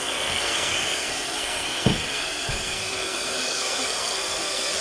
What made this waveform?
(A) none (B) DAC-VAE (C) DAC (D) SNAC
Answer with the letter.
D